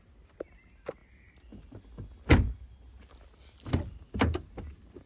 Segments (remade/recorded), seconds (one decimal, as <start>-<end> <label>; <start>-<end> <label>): 0.0-5.1 recorded